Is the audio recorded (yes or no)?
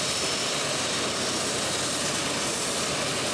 yes